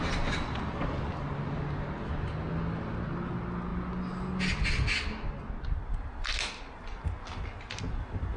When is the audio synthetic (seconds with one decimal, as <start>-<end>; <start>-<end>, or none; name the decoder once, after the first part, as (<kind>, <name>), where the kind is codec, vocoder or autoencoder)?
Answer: none